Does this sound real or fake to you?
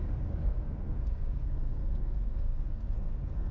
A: fake